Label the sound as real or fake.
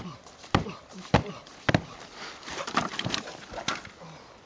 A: real